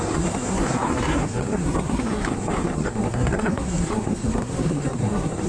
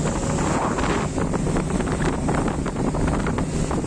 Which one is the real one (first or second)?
second